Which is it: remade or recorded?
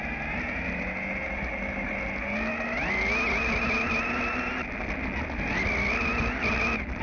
recorded